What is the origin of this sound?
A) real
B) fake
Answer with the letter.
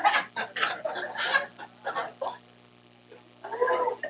A